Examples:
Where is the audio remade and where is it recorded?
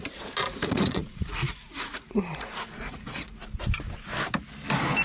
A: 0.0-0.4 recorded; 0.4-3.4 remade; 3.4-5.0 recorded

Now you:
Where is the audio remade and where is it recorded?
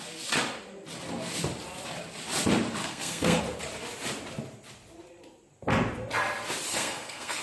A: 0.0-2.8 recorded; 2.8-3.4 remade; 3.4-6.7 recorded; 6.7-7.4 remade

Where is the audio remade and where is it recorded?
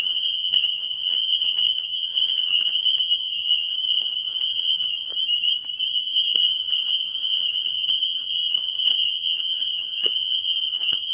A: 0.0-5.1 remade; 5.1-6.0 recorded; 6.0-11.1 remade